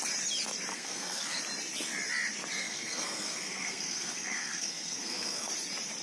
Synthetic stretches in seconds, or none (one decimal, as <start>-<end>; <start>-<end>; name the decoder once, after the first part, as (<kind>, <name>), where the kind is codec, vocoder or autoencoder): 0.7-1.4 (codec, SNAC); 2.6-5.5